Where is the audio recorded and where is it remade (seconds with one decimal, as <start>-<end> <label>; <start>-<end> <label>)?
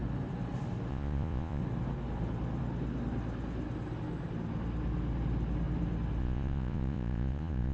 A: 0.0-0.9 recorded; 0.9-1.6 remade; 1.6-6.2 recorded; 6.2-7.7 remade